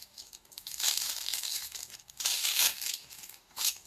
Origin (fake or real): fake